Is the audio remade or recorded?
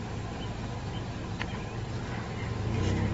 recorded